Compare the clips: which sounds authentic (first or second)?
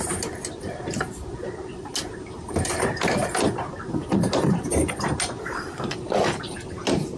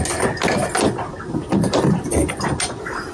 second